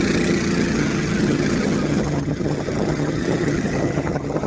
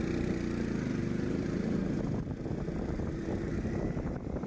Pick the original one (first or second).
second